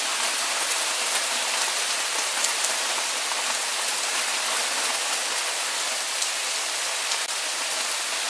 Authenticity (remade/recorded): recorded